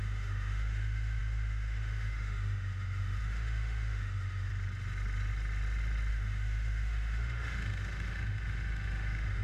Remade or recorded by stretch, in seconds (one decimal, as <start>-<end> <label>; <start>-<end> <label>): 0.0-4.5 remade; 4.5-6.1 recorded; 6.1-9.4 remade